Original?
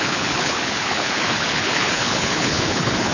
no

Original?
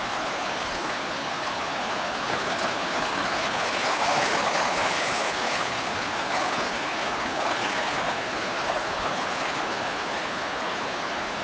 no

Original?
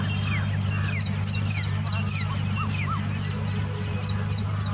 yes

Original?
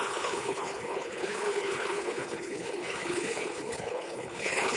no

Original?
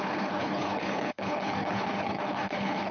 no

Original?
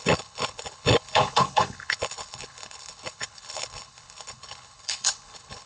no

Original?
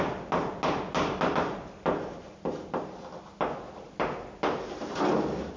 yes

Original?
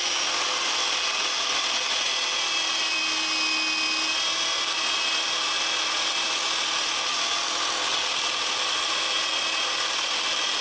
yes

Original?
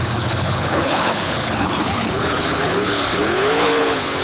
no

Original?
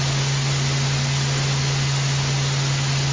yes